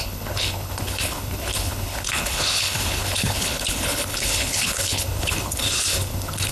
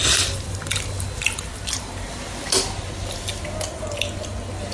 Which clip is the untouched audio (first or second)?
second